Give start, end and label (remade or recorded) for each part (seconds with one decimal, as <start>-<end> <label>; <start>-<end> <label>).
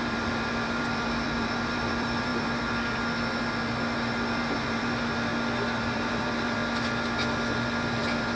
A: 0.0-2.3 remade; 2.3-4.4 recorded; 4.4-5.3 remade; 5.3-5.8 recorded; 5.8-6.6 remade; 6.6-8.4 recorded